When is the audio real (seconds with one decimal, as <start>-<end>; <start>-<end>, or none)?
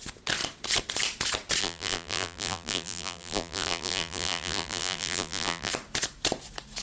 0.0-1.6; 5.7-6.8